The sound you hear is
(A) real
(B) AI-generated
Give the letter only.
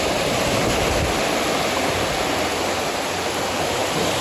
A